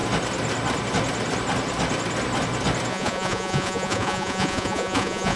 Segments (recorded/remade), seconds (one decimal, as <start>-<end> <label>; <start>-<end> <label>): 0.0-2.9 recorded; 2.9-5.4 remade